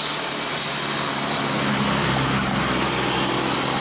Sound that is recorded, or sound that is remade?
recorded